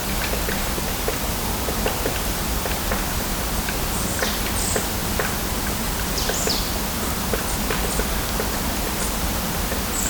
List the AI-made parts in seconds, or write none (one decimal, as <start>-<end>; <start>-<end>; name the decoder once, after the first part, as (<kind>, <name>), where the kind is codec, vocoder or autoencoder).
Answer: none